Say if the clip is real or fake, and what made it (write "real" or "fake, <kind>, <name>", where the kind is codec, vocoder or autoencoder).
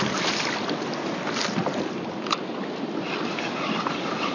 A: real